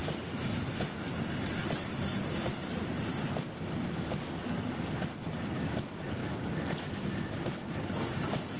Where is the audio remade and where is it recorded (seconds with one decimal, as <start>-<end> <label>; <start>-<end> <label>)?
0.0-8.6 recorded